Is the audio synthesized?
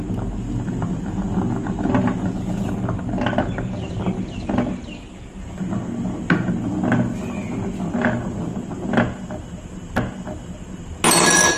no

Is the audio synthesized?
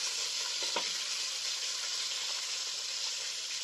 no